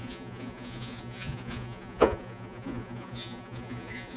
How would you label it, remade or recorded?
remade